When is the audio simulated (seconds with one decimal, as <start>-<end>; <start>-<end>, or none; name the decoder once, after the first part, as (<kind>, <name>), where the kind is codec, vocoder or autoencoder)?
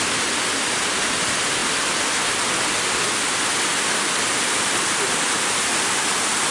none